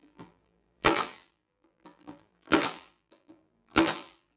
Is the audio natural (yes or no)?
no